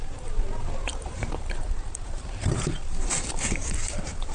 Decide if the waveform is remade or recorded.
remade